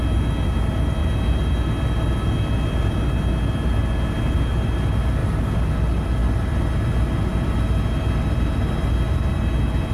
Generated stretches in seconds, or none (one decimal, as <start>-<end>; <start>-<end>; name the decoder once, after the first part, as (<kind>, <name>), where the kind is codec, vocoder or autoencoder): 5.2-5.7 (vocoder, BigVGAN v2)